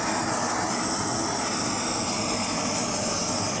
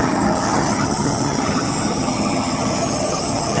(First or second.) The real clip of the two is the first